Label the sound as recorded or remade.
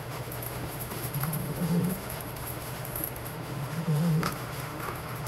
remade